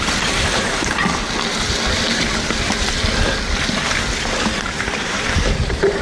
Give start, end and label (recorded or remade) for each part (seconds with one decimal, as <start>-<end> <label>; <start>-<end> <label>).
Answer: 0.0-1.2 remade; 1.2-4.8 recorded; 4.8-6.0 remade